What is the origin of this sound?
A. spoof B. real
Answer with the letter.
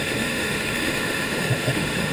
A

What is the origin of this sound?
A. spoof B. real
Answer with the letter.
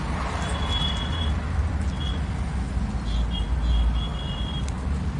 B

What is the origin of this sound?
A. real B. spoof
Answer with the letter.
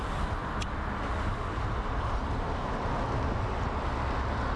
A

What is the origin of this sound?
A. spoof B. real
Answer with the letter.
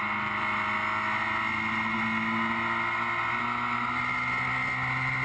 B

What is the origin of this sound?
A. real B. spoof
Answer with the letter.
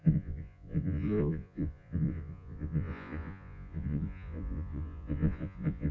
B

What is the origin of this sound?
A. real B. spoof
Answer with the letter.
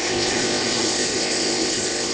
B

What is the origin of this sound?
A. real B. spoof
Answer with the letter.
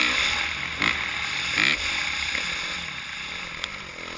A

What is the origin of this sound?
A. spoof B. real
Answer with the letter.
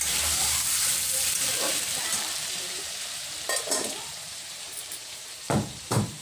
A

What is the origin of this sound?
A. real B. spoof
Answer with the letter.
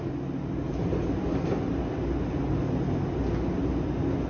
A